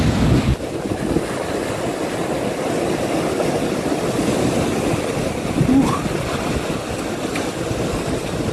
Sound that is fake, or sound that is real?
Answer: real